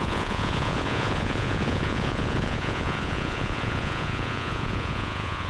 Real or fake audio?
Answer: fake